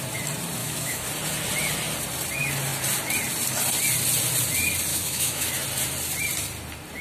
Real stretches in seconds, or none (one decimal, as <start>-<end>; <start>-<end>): 0.0-0.6; 1.1-4.9; 5.5-7.0